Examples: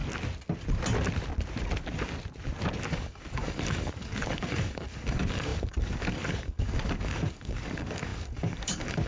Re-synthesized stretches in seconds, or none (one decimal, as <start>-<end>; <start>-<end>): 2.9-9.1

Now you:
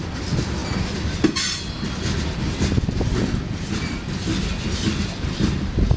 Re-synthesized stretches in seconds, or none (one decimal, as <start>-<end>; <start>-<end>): none

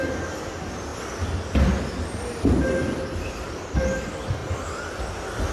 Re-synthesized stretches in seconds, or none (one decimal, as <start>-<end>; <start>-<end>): none